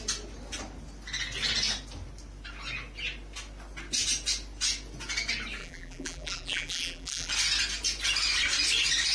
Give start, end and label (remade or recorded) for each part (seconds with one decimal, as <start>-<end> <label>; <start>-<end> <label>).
0.0-5.6 recorded; 5.6-7.3 remade; 7.3-9.1 recorded